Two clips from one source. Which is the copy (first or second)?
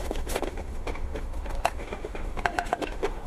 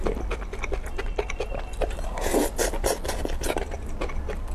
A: first